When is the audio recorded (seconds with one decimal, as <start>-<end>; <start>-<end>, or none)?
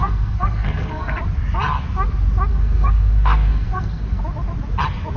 1.2-2.5; 4.2-5.2